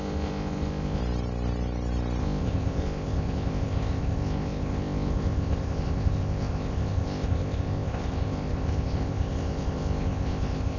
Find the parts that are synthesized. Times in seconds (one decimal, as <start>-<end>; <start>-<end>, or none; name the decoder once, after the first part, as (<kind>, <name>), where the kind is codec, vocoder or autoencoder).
0.0-1.0 (codec, ZipCodec); 2.2-10.8